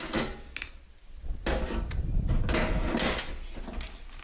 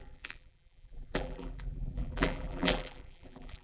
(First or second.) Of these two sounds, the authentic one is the first